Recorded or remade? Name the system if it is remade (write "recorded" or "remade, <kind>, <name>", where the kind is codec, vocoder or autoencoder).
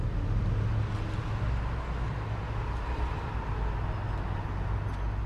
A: recorded